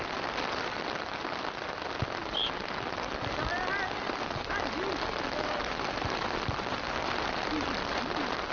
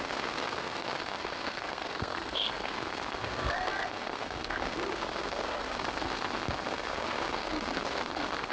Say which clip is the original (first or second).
first